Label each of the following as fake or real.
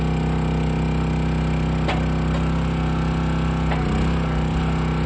real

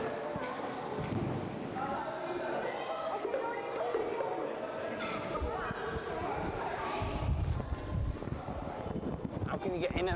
real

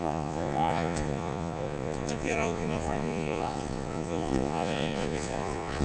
fake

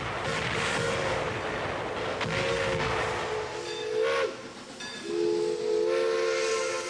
real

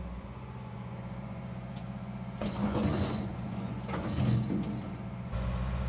fake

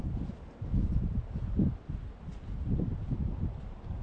real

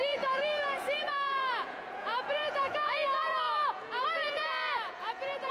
fake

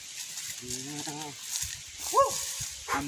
real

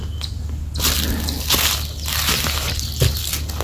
real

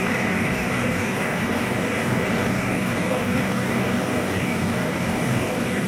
fake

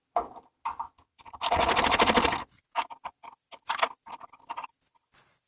real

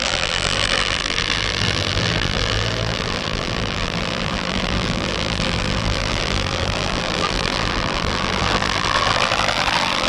fake